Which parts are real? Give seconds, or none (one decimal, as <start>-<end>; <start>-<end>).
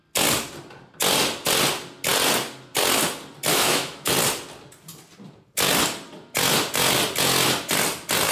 0.0-3.5; 4.1-8.3